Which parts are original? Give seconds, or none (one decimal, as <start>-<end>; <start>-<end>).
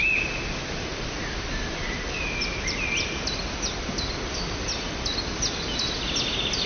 0.0-0.4; 2.2-6.7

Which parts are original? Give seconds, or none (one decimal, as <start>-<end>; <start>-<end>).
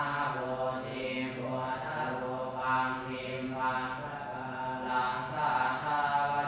0.0-0.9; 1.5-6.5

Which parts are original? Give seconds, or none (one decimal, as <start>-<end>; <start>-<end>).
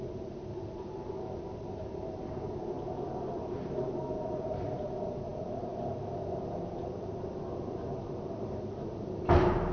none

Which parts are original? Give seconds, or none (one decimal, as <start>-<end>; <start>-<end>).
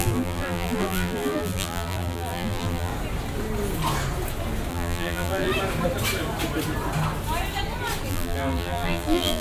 2.9-4.7; 5.5-8.1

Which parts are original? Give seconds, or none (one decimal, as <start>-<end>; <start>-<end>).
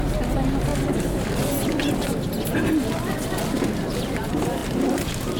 0.7-3.9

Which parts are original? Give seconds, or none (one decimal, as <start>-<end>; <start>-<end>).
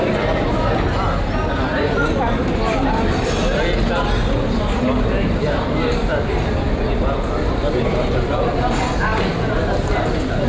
0.0-1.7; 2.4-6.1; 8.3-10.5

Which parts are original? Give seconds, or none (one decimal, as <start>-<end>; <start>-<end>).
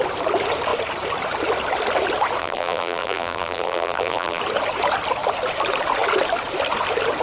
0.0-2.4; 4.4-7.2